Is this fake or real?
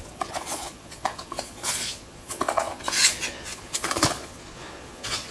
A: fake